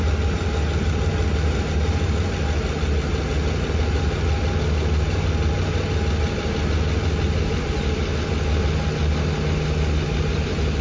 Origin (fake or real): real